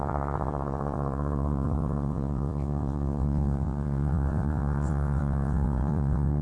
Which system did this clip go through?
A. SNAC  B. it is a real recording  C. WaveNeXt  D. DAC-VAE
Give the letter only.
C